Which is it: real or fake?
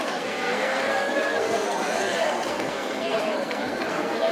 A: fake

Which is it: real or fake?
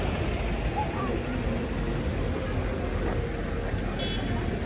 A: real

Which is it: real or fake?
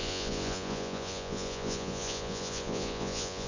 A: fake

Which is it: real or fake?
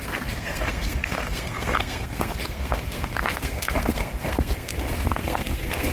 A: fake